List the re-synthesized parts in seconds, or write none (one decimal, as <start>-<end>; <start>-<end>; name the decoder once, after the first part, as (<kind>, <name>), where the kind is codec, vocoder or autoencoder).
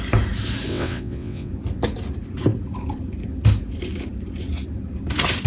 0.7-1.5 (vocoder, WaveNeXt)